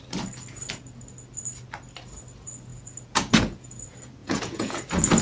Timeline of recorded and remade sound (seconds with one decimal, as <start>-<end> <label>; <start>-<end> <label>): 0.0-2.7 recorded; 2.7-3.8 remade; 3.8-4.2 recorded; 4.2-4.8 remade; 4.8-5.2 recorded